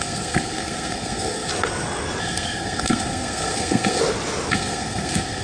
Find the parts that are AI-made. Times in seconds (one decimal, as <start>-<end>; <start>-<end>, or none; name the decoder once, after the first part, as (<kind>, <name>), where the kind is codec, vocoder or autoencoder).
0.0-1.5 (codec, SNAC); 2.2-4.0; 4.5-5.4